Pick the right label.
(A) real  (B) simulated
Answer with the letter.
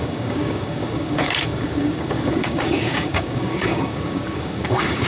B